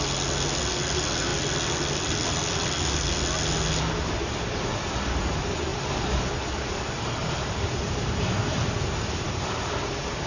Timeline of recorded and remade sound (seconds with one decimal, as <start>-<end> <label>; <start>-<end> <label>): 0.0-5.7 recorded; 5.7-6.2 remade; 6.2-7.2 recorded; 7.2-9.7 remade; 9.7-10.3 recorded